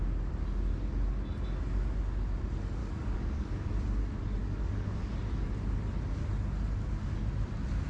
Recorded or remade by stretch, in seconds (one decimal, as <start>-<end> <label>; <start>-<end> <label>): 0.0-2.8 recorded; 2.8-3.7 remade; 3.7-4.4 recorded; 4.4-5.1 remade; 5.1-7.9 recorded